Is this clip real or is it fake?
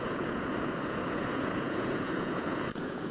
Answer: fake